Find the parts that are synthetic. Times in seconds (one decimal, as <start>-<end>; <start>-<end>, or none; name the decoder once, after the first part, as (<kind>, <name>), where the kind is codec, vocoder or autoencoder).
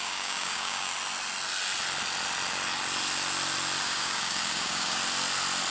0.0-0.9 (codec, DAC); 3.8-5.0